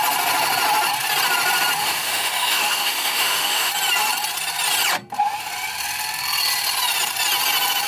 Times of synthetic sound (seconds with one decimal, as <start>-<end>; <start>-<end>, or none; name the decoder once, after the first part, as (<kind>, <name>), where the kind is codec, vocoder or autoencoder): 1.8-3.7 (autoencoder, DAC-VAE)